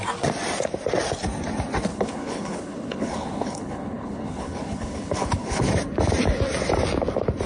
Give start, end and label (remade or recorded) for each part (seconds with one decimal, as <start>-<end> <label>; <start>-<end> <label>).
0.0-1.9 recorded; 1.9-5.7 remade; 5.7-7.5 recorded